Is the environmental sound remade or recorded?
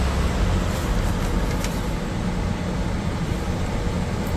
recorded